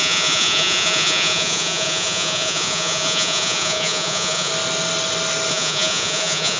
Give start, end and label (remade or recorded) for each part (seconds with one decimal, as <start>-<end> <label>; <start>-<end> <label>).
0.0-4.5 remade; 4.5-5.5 recorded; 5.5-6.6 remade